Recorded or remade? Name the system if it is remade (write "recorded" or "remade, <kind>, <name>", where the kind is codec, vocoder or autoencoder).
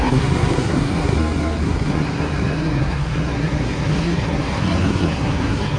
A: remade, codec, SNAC